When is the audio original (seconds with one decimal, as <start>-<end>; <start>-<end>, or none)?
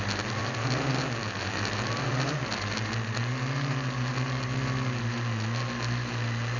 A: 0.0-6.6